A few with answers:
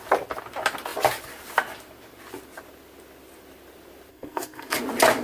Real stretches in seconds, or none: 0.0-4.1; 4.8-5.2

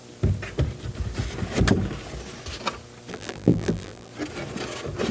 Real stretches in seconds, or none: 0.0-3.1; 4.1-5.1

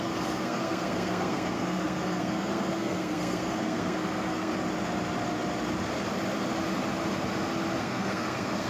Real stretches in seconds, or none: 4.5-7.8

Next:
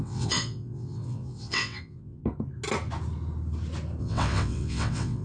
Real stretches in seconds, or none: 2.2-4.0

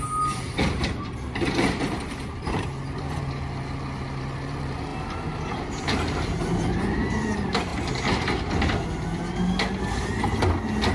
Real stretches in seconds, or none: 4.9-5.6; 7.7-10.9

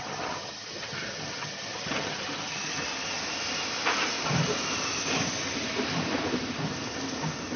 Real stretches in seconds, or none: 2.9-7.6